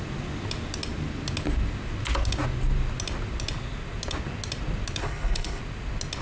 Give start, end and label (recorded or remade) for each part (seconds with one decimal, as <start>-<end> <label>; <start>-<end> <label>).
0.0-5.0 recorded; 5.0-5.6 remade; 5.6-6.2 recorded